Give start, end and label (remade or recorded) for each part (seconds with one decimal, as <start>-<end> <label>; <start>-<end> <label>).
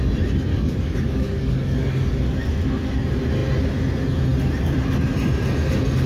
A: 0.0-0.5 recorded; 0.5-2.2 remade; 2.2-6.1 recorded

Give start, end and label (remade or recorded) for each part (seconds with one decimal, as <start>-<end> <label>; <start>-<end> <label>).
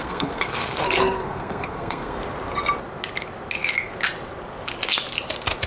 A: 0.0-2.2 remade; 2.2-5.7 recorded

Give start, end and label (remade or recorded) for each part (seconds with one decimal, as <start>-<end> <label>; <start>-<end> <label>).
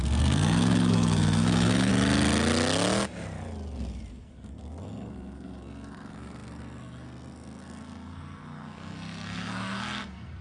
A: 0.0-1.9 remade; 1.9-4.1 recorded; 4.1-10.4 remade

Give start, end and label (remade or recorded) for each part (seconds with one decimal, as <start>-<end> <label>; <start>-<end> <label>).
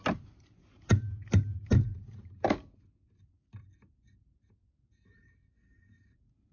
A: 0.0-6.5 recorded